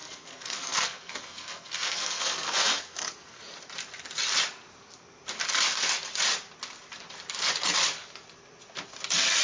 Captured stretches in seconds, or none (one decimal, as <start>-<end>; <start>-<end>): 3.4-9.4